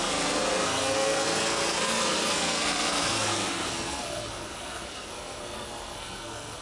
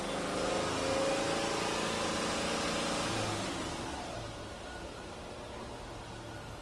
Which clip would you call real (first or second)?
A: second